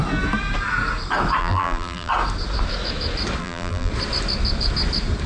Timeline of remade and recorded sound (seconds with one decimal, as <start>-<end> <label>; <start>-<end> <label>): 0.0-1.4 recorded; 1.4-2.1 remade; 2.1-3.4 recorded; 3.4-3.9 remade; 3.9-5.3 recorded